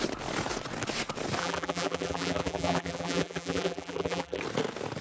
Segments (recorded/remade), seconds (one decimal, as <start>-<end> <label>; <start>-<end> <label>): 0.0-1.4 recorded; 1.4-4.4 remade; 4.4-5.0 recorded